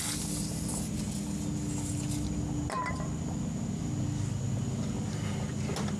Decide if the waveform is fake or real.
real